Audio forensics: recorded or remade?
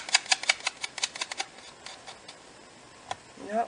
recorded